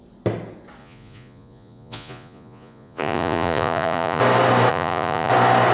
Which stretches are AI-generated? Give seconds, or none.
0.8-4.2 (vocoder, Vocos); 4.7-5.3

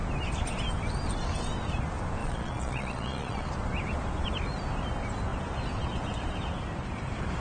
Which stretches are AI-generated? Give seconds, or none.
2.2-3.5 (vocoder, Vocos)

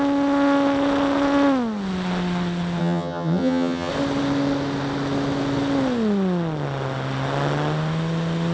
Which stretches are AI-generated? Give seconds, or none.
2.8-3.9 (vocoder, HiFi-GAN)

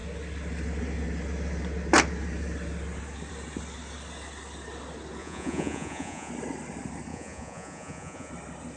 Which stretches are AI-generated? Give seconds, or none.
5.2-6.3 (vocoder, Vocos); 7.1-8.3

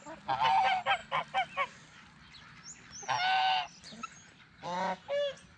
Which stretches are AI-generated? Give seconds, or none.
none

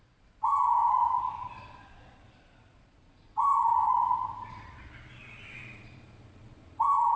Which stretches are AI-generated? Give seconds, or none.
0.0-3.5 (vocoder, Vocos); 4.5-7.2